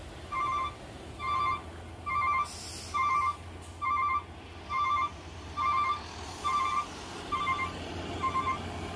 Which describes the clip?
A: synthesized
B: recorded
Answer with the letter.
B